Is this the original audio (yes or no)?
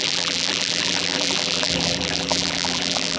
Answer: no